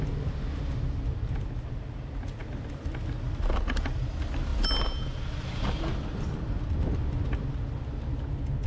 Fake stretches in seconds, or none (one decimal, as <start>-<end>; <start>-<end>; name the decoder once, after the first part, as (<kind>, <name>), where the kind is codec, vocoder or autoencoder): none